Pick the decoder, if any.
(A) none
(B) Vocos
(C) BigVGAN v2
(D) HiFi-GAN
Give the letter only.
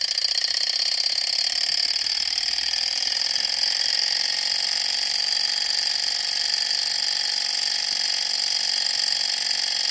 A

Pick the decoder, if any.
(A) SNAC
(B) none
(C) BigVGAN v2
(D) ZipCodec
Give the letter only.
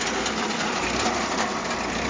B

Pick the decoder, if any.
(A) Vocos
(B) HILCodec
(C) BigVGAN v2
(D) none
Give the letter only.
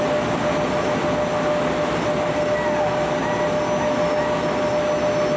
D